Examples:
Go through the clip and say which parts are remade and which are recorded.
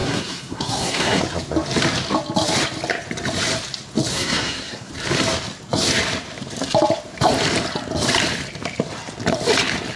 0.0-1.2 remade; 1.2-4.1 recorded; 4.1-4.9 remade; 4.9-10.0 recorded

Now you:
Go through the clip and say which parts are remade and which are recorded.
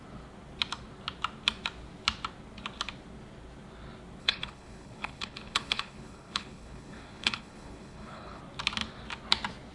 0.0-4.2 recorded; 4.2-8.4 remade; 8.4-9.7 recorded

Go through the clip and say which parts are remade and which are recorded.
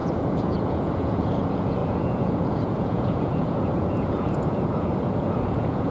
0.0-5.9 remade